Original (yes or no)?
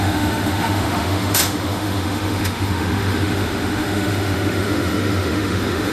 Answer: no